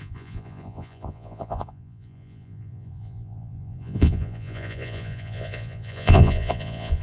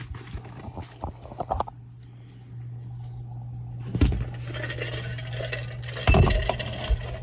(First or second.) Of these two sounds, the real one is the second